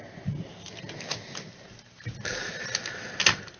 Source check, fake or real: real